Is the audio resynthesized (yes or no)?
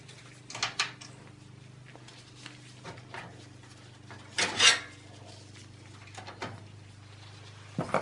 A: no